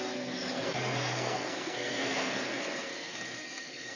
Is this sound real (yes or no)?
no